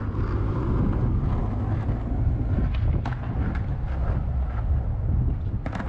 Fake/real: real